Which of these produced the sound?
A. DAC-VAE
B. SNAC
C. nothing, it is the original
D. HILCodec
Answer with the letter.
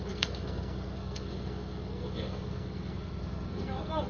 B